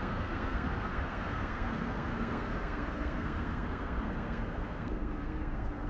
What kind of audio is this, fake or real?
fake